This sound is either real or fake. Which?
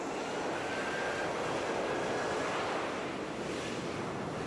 real